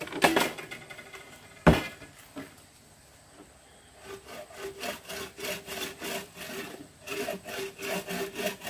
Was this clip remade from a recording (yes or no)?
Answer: no